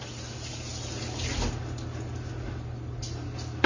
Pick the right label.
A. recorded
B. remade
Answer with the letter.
A